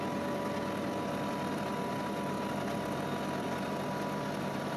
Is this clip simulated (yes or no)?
no